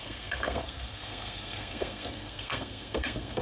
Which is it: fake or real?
fake